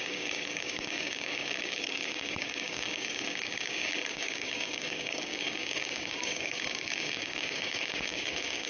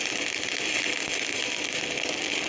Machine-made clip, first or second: first